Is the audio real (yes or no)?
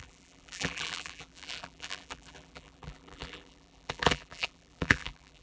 no